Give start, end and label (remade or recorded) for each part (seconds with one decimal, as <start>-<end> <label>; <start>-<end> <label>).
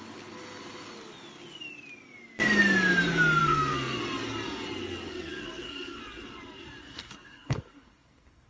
0.0-3.4 recorded; 3.4-4.0 remade; 4.0-5.1 recorded; 5.1-6.0 remade; 6.0-6.8 recorded; 6.8-8.5 remade